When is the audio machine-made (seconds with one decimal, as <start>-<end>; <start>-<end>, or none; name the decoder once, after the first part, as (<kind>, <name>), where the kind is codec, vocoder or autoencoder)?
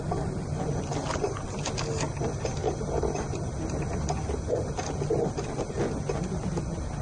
none